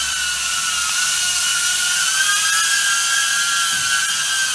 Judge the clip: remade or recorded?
recorded